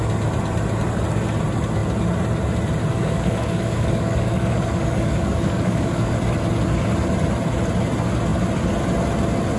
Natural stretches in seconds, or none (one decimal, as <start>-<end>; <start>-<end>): 0.0-2.9; 6.2-9.6